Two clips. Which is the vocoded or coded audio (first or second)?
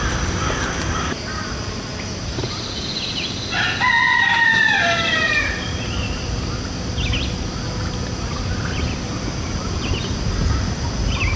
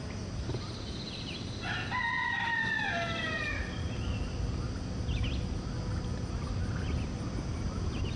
first